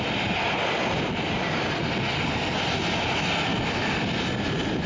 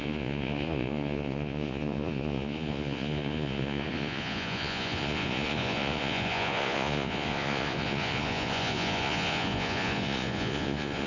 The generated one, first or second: second